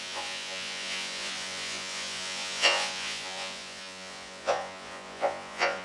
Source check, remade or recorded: remade